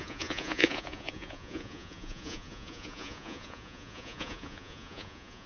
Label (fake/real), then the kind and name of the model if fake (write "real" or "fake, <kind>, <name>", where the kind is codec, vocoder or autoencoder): fake, vocoder, Vocos